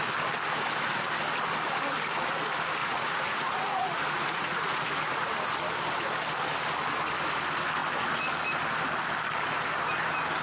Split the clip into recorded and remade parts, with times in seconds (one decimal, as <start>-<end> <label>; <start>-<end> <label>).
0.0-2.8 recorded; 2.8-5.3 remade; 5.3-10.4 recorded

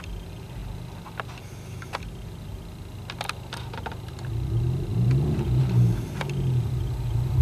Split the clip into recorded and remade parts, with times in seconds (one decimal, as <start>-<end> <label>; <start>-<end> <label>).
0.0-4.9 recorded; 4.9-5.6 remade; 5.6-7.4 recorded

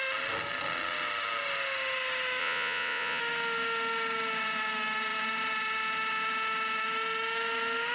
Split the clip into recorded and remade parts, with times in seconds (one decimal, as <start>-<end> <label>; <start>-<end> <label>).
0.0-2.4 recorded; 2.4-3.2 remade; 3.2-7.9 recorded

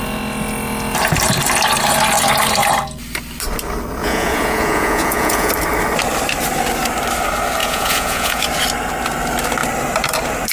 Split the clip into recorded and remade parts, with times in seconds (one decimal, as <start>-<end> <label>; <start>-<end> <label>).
0.0-4.0 recorded; 4.0-5.5 remade; 5.5-7.6 recorded; 7.6-8.4 remade; 8.4-10.5 recorded